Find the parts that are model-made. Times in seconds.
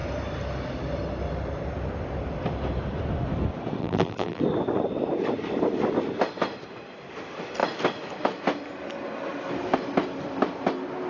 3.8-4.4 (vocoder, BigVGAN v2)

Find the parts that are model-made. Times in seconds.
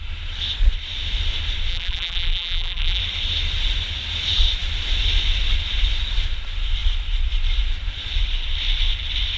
1.7-3.0 (vocoder, BigVGAN v2)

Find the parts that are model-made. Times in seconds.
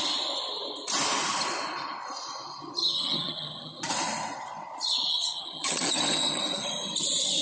2.8-3.8 (vocoder, HiFi-GAN); 5.1-6.4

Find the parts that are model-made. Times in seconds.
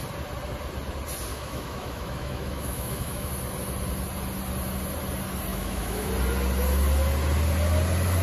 1.3-3.3 (autoencoder, DAC-VAE); 5.5-6.1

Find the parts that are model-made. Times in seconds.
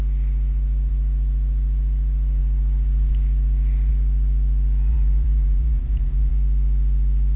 4.9-6.3 (vocoder, BigVGAN v2)